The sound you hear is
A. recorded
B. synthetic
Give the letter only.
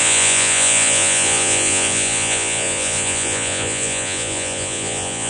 B